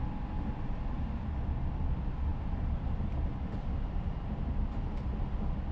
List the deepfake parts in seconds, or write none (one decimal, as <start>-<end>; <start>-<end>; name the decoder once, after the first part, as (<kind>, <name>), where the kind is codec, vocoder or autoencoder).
none

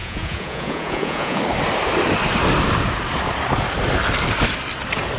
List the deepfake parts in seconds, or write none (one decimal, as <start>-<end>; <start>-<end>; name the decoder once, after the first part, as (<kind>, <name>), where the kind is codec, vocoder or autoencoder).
0.0-1.4 (vocoder, Vocos)

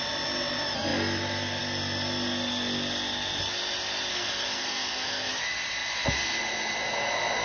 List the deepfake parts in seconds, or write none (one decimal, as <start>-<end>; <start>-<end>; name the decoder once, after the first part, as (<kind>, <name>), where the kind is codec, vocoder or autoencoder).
4.1-5.3 (codec, SNAC)

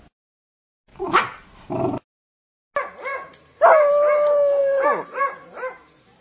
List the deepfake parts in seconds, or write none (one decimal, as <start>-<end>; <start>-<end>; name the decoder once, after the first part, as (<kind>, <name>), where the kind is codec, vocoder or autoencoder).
0.9-1.8 (vocoder, BigVGAN v2); 4.6-6.2